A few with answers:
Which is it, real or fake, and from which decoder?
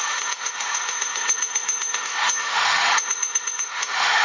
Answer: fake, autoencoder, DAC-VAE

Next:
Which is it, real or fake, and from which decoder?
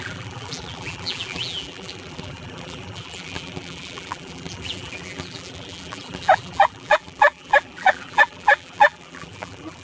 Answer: fake, vocoder, BigVGAN v2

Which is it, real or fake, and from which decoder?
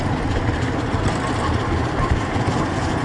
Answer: real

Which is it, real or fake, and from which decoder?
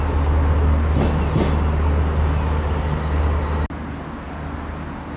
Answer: real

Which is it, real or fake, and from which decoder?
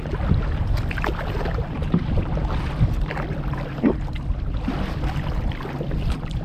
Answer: real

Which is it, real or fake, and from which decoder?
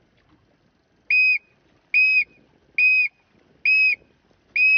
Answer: real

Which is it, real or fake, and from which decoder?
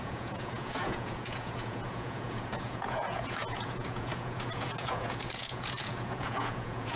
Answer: fake, vocoder, Vocos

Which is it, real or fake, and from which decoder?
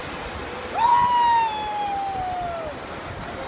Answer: real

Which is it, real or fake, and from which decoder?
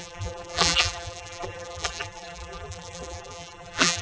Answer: fake, vocoder, BigVGAN v2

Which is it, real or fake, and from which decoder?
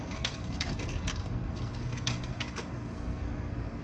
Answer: fake, codec, SNAC